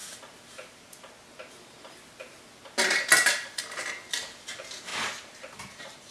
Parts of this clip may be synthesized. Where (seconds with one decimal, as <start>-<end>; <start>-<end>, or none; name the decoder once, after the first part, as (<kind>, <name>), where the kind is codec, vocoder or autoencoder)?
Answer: none